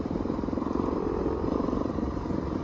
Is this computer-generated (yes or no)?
yes